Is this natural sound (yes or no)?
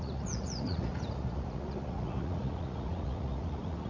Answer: no